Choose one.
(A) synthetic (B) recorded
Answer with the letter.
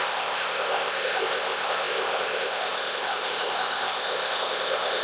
A